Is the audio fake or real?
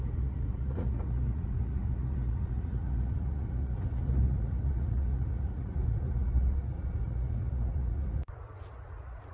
fake